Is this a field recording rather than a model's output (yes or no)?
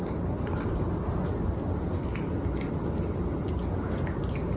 yes